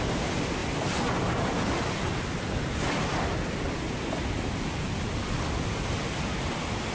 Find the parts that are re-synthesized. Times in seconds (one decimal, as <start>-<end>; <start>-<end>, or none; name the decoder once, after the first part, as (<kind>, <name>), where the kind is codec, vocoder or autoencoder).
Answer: none